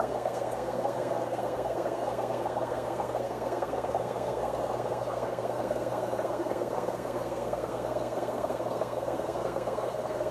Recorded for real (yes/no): no